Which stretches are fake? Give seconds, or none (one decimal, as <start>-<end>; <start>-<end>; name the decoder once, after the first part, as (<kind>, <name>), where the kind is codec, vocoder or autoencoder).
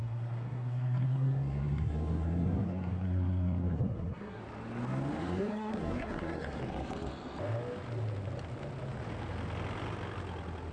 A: 0.0-4.4 (codec, SNAC); 5.2-6.6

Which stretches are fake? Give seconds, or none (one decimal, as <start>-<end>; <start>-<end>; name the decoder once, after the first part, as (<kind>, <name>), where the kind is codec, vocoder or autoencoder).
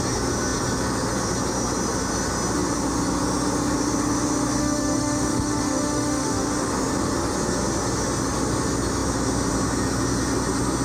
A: 4.6-6.7 (autoencoder, DAC-VAE)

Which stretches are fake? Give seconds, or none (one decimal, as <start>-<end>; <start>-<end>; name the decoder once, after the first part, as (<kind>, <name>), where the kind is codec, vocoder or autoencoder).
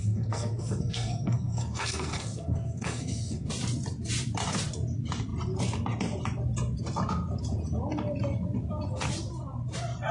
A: 0.0-3.5 (codec, SNAC)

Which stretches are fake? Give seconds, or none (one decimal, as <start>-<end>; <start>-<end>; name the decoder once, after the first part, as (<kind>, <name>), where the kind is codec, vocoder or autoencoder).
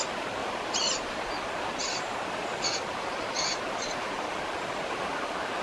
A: 0.4-1.3 (vocoder, BigVGAN v2)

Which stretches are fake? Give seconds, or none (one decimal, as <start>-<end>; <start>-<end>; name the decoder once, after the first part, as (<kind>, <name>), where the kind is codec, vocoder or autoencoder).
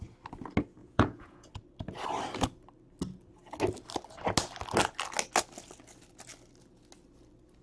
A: 0.8-1.5 (vocoder, Vocos)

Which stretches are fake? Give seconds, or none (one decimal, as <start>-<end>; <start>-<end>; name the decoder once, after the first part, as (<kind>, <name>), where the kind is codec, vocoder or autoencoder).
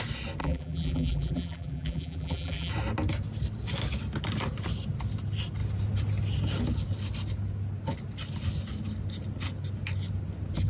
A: 0.4-2.7 (vocoder, BigVGAN v2)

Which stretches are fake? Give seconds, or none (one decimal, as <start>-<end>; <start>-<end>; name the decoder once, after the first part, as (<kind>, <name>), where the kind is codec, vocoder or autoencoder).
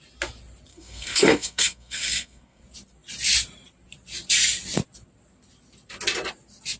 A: 0.7-2.6 (codec, SNAC)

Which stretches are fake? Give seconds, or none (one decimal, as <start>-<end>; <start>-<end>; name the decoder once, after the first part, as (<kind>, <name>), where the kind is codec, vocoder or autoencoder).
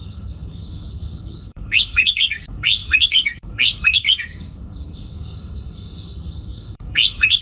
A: 0.0-7.4 (codec, SNAC)